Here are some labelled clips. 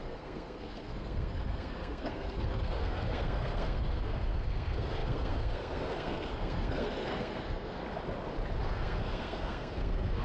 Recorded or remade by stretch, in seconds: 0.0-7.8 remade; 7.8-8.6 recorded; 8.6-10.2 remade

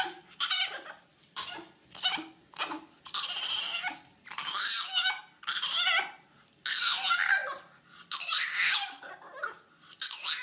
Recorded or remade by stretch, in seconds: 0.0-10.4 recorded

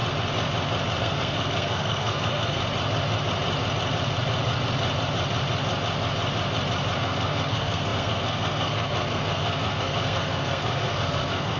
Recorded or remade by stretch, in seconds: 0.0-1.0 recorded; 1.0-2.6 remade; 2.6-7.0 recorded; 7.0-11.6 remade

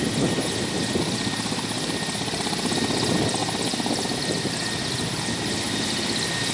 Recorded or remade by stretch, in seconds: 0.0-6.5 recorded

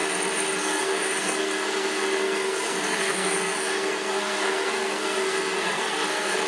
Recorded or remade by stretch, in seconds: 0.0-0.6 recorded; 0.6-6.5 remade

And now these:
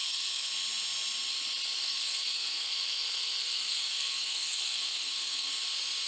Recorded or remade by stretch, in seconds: 0.0-0.5 remade; 0.5-1.8 recorded; 1.8-5.5 remade; 5.5-6.1 recorded